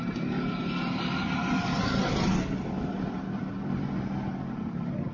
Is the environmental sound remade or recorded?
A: recorded